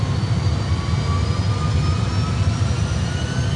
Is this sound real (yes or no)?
yes